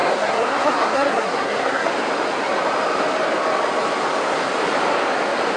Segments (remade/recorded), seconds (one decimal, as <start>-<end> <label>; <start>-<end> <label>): 0.0-1.9 remade; 1.9-5.6 recorded